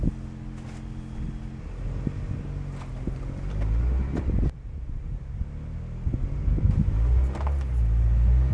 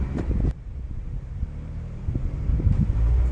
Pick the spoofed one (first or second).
second